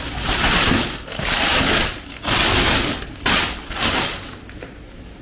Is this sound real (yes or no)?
yes